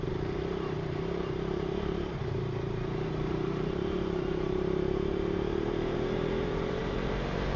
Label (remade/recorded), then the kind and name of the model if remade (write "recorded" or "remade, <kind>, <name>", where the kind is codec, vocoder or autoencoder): remade, vocoder, BigVGAN v2